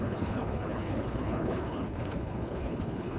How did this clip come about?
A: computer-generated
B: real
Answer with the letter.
A